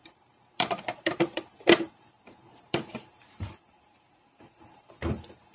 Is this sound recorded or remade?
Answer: remade